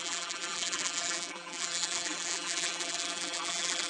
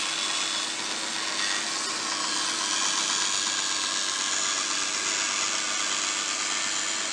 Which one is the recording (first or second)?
second